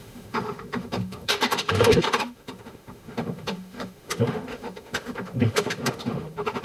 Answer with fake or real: fake